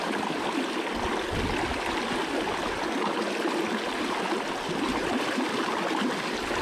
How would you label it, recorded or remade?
recorded